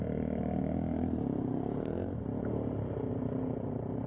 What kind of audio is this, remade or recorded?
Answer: remade